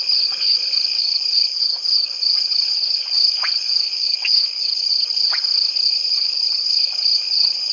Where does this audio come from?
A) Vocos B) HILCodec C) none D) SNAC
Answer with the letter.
B